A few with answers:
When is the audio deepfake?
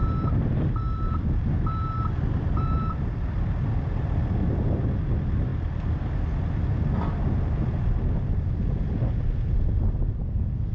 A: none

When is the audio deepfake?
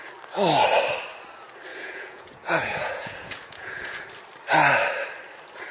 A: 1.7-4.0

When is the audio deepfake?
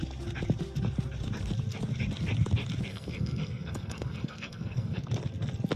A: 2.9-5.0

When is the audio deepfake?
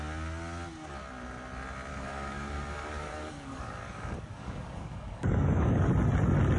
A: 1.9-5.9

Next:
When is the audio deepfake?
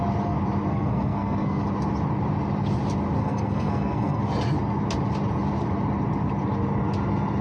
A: 0.7-1.6; 3.2-4.2